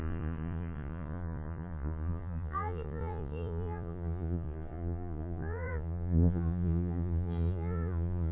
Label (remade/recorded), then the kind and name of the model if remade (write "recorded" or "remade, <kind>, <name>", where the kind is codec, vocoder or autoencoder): remade, vocoder, Vocos